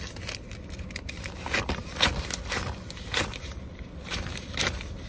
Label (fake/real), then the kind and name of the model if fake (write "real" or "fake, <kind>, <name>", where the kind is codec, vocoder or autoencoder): real